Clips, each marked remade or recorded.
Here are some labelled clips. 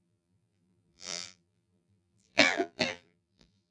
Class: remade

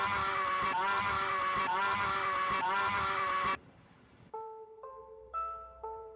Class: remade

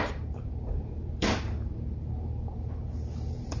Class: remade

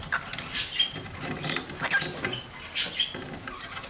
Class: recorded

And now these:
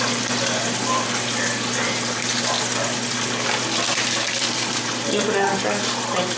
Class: remade